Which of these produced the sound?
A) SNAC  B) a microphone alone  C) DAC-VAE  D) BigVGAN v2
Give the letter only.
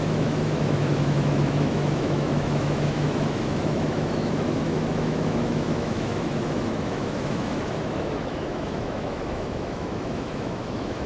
C